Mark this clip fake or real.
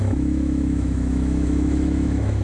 fake